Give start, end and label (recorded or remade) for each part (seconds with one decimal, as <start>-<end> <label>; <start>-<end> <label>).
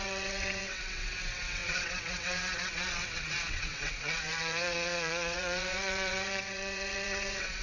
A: 0.0-7.6 remade